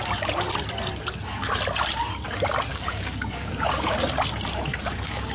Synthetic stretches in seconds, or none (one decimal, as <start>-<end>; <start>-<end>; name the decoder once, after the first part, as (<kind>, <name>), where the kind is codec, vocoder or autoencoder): 2.7-3.5 (codec, DAC); 4.7-5.3